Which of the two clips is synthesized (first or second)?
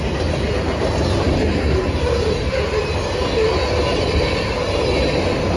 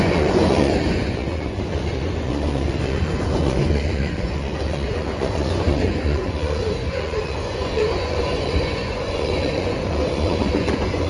second